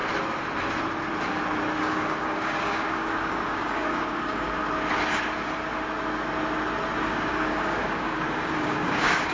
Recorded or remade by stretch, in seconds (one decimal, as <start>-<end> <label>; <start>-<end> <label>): 0.0-1.8 recorded; 1.8-4.6 remade; 4.6-7.0 recorded; 7.0-9.3 remade